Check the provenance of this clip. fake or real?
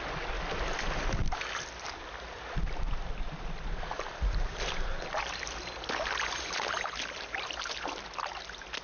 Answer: real